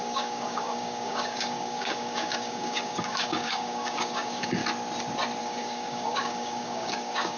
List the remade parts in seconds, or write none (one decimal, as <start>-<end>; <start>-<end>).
0.0-4.6; 5.4-7.4